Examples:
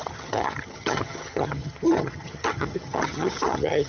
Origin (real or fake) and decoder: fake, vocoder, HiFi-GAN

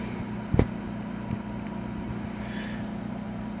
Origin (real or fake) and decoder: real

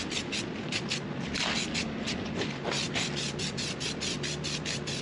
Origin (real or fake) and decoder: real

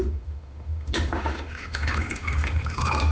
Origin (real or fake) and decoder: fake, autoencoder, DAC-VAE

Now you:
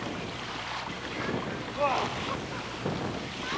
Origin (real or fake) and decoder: fake, vocoder, BigVGAN v2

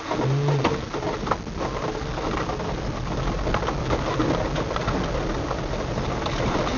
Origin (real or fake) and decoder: real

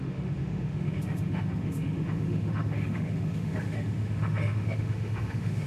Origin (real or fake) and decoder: fake, autoencoder, DAC-VAE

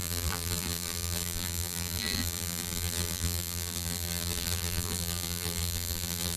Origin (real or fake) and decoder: fake, vocoder, BigVGAN v2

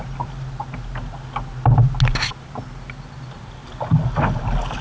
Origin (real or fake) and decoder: real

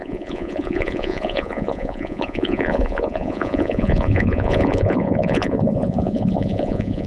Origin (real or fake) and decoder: fake, vocoder, Vocos